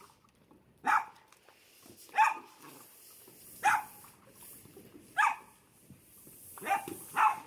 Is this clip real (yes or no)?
yes